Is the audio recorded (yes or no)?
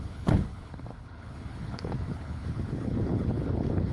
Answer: no